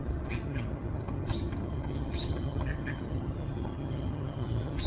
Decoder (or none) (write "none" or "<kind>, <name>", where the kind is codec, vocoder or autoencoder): vocoder, HiFi-GAN